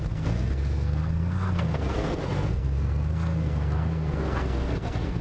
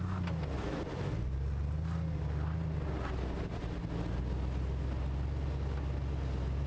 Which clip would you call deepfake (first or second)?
first